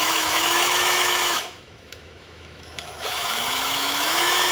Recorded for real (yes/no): no